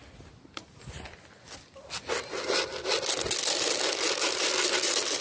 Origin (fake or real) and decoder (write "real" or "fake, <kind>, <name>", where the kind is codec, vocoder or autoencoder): real